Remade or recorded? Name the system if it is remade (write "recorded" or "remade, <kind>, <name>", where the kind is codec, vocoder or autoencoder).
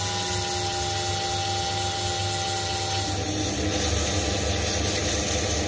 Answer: recorded